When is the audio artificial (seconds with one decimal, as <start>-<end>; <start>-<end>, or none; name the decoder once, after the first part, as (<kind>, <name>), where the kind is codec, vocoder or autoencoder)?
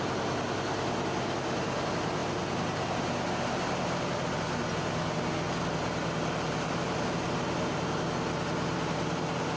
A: none